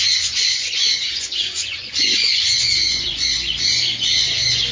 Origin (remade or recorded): remade